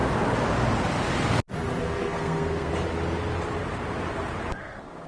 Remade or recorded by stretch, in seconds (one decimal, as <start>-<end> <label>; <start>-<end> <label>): 0.0-1.8 recorded; 1.8-2.7 remade; 2.7-4.6 recorded; 4.6-5.1 remade